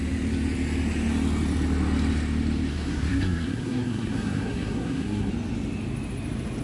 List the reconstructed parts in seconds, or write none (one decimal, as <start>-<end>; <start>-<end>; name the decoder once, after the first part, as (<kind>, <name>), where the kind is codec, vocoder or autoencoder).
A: 2.7-5.3 (codec, SNAC)